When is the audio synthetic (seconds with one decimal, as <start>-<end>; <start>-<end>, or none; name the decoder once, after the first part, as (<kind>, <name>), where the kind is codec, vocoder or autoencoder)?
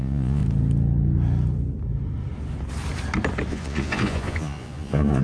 0.0-0.4 (vocoder, Vocos); 3.5-5.2